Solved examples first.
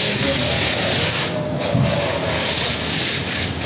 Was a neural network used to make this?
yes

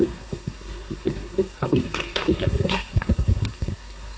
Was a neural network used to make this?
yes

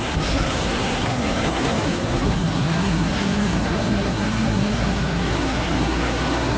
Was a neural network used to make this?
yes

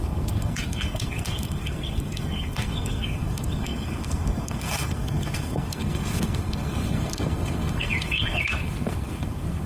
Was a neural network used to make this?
yes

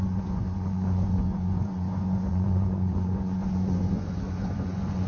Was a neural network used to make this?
yes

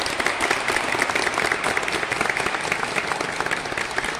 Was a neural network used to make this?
no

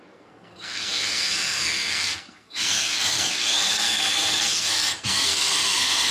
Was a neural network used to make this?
yes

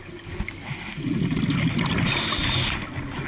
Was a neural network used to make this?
no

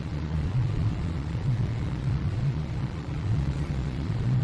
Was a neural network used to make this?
yes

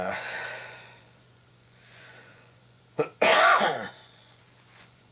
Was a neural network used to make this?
yes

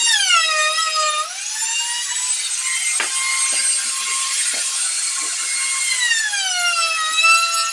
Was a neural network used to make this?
no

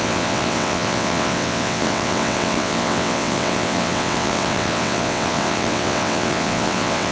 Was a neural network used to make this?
yes